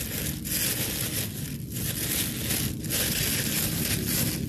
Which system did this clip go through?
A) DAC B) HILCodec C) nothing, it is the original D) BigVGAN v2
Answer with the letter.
C